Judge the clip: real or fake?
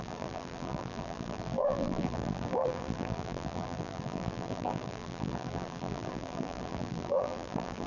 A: fake